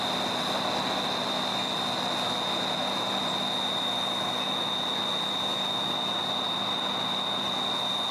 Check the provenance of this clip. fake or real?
real